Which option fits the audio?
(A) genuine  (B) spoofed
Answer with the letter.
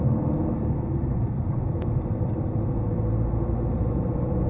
A